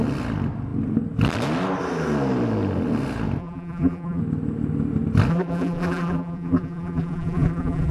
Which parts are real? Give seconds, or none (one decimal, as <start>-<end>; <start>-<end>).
0.0-3.4; 4.2-5.3